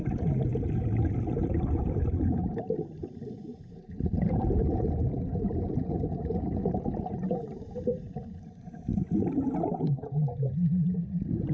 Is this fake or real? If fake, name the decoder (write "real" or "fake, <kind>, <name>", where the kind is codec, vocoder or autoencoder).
fake, vocoder, BigVGAN v2